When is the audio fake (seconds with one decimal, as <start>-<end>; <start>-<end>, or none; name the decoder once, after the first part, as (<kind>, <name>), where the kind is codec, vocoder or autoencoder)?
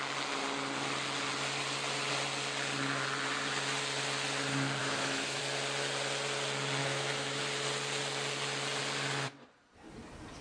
4.8-5.4 (autoencoder, DAC-VAE); 6.8-7.4